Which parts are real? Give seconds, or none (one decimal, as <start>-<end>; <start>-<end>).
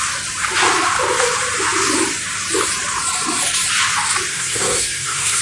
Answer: 0.0-4.3